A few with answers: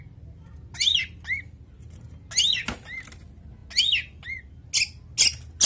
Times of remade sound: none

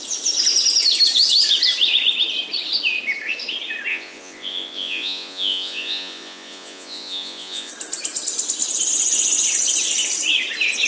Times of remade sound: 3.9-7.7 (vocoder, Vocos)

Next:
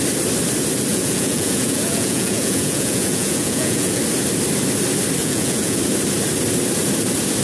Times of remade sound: 0.9-4.0 (vocoder, Vocos); 5.2-5.8

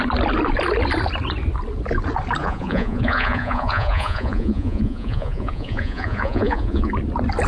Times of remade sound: 2.4-6.9 (vocoder, Vocos)

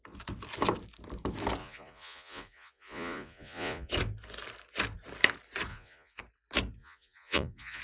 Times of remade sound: 1.6-3.9 (vocoder, Vocos); 5.7-6.2; 6.8-7.8